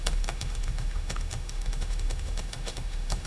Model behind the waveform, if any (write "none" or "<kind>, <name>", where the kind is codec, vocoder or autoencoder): autoencoder, DAC-VAE